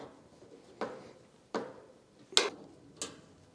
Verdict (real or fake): real